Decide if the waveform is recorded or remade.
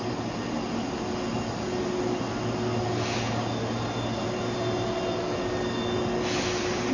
recorded